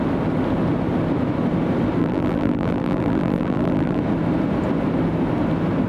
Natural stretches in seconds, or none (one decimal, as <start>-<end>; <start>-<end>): 0.0-2.0; 4.0-5.9